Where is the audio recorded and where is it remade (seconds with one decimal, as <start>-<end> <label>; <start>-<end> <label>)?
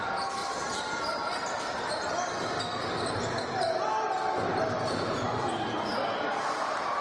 0.0-0.4 recorded; 0.4-1.0 remade; 1.0-4.5 recorded; 4.5-5.7 remade; 5.7-7.0 recorded